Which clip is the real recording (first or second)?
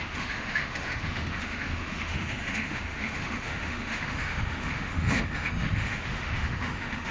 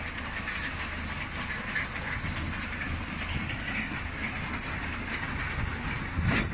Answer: second